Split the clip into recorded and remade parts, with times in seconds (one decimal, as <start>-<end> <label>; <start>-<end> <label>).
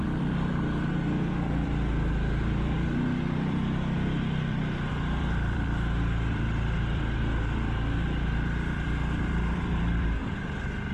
0.0-10.9 remade